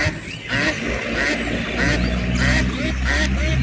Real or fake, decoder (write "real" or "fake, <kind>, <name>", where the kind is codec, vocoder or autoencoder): real